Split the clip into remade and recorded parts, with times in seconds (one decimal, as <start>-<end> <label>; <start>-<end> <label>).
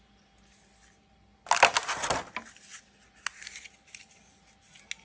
0.0-5.0 recorded